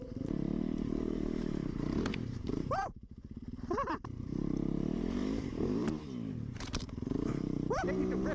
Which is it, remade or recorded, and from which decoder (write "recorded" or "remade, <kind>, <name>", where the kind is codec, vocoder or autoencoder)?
remade, vocoder, BigVGAN v2